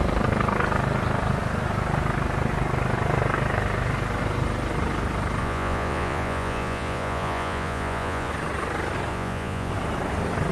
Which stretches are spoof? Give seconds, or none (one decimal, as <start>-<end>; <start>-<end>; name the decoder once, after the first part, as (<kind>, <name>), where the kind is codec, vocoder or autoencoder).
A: 5.4-8.3 (vocoder, Vocos); 9.1-9.7